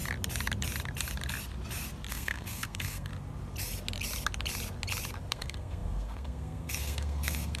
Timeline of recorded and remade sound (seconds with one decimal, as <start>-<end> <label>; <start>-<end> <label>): 0.0-2.1 recorded; 2.1-3.1 remade; 3.1-5.3 recorded; 5.3-7.6 remade